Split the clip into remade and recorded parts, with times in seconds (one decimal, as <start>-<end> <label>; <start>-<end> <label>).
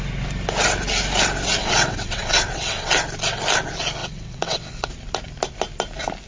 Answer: 0.0-1.6 recorded; 1.6-2.9 remade; 2.9-4.0 recorded; 4.0-4.9 remade; 4.9-6.3 recorded